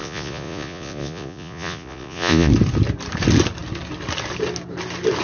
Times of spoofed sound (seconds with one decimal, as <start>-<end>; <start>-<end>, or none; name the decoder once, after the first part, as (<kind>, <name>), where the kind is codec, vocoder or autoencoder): 0.0-2.5 (vocoder, Vocos)